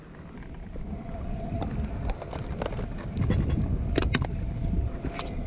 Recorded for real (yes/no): yes